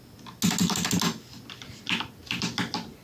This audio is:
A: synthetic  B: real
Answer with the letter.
B